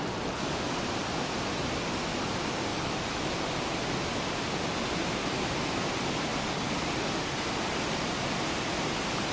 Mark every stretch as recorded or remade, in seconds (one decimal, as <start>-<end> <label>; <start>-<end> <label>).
0.0-2.7 recorded; 2.7-3.3 remade; 3.3-9.3 recorded